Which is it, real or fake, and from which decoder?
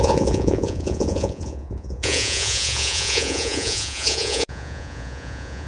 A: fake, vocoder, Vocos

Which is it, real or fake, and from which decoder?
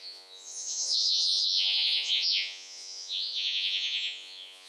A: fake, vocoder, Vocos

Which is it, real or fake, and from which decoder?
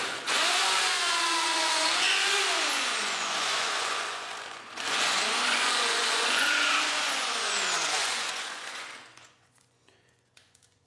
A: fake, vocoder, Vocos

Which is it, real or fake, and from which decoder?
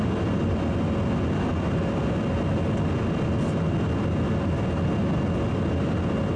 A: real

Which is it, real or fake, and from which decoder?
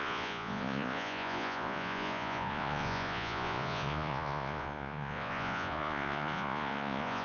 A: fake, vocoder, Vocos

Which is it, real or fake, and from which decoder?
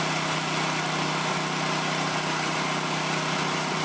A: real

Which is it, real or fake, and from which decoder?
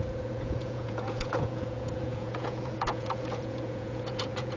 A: fake, vocoder, Vocos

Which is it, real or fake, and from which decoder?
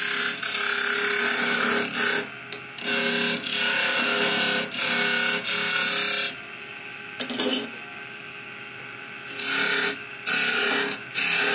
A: real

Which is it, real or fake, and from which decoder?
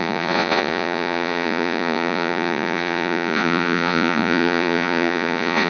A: fake, vocoder, Vocos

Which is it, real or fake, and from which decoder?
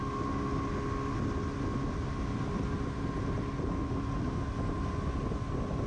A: real